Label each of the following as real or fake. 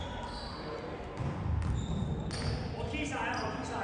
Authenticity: real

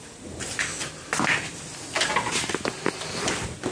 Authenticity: real